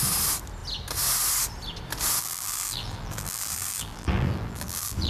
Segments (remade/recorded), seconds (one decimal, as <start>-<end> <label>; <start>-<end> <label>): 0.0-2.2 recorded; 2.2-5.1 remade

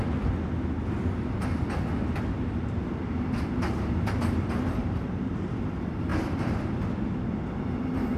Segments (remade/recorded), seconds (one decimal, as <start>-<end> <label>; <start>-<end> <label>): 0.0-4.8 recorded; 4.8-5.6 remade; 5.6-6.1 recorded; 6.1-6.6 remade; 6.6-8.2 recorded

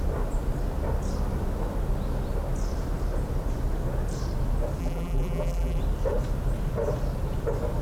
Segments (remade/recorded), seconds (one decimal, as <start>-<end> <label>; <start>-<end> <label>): 0.0-4.8 recorded; 4.8-5.8 remade; 5.8-7.8 recorded